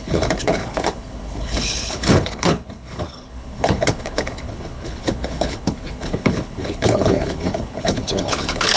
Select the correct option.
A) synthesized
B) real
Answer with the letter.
A